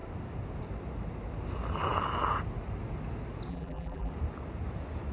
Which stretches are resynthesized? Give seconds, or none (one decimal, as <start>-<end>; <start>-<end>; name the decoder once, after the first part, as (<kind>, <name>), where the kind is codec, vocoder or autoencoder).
3.5-4.1 (vocoder, BigVGAN v2)